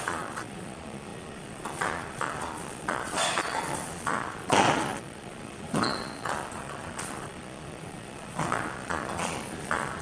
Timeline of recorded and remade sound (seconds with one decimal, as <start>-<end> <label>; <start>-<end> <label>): 0.0-10.0 remade